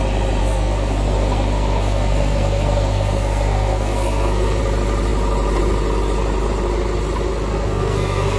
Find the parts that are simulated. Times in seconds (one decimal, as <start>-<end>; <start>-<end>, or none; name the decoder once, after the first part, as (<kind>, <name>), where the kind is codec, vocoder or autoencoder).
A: 0.4-4.6 (codec, SNAC); 7.5-8.4